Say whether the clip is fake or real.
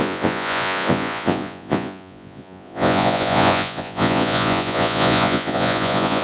fake